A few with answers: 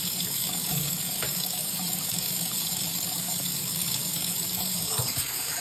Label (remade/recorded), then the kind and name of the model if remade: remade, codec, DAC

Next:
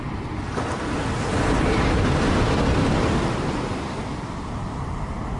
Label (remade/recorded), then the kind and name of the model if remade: recorded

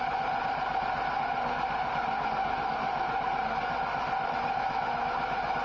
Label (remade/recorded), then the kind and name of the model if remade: recorded